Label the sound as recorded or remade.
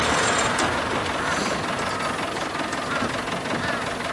recorded